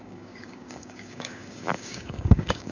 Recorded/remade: remade